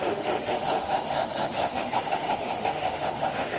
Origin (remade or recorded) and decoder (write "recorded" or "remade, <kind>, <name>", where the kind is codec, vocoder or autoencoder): remade, autoencoder, DAC-VAE